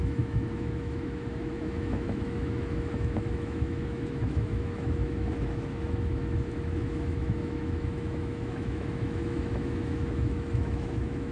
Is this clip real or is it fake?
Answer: fake